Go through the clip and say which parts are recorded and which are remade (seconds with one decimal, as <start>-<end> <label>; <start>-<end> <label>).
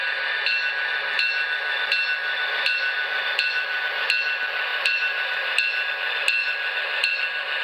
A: 0.0-2.2 recorded; 2.2-3.8 remade; 3.8-4.7 recorded; 4.7-5.9 remade; 5.9-6.4 recorded; 6.4-7.6 remade